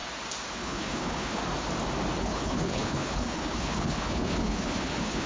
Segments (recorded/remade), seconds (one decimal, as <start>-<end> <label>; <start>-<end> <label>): 0.0-0.5 recorded; 0.5-1.4 remade; 1.4-2.2 recorded; 2.2-5.3 remade